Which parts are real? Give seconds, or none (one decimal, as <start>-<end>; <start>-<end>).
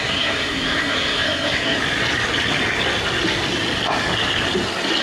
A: 1.8-5.0